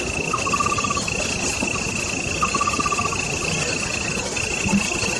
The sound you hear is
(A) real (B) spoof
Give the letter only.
A